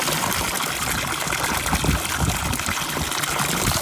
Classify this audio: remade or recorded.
recorded